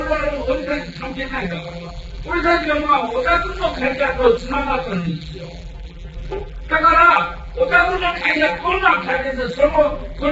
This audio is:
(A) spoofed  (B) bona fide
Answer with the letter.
A